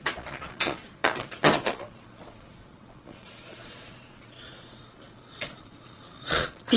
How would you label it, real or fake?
fake